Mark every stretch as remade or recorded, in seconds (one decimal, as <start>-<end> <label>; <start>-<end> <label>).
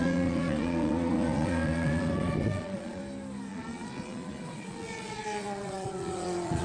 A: 0.0-3.0 remade; 3.0-3.5 recorded; 3.5-6.6 remade